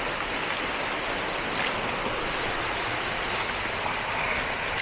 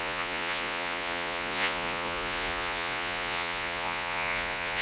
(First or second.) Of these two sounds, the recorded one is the first